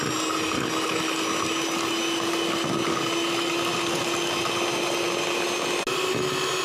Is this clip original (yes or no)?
yes